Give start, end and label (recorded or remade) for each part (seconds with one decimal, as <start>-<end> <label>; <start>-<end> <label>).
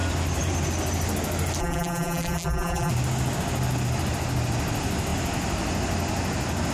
0.0-1.6 recorded; 1.6-2.9 remade; 2.9-6.7 recorded